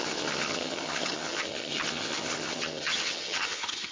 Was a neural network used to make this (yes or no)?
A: yes